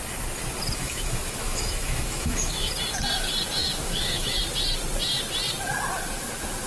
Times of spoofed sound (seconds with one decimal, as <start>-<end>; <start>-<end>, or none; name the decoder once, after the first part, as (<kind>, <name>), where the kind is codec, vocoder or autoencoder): 0.8-2.7 (autoencoder, DAC-VAE); 3.6-4.4